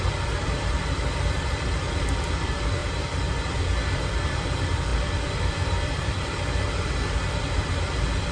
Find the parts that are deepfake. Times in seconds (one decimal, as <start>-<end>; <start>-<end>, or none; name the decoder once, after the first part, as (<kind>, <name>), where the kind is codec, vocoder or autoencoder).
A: 0.0-2.8 (vocoder, BigVGAN v2); 3.5-8.3